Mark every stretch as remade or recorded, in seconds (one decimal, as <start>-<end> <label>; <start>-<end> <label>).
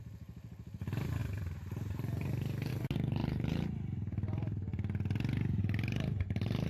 0.0-1.2 recorded; 1.2-2.7 remade; 2.7-6.7 recorded